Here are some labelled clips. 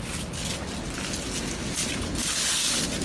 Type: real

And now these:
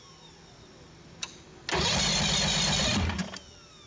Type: real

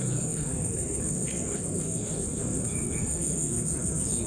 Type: fake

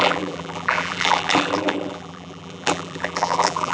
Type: fake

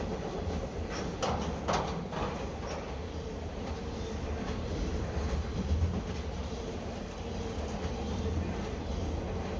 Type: real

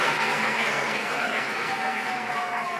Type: fake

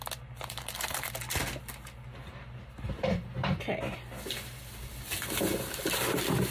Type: real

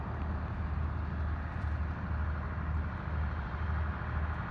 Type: real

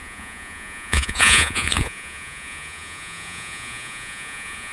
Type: fake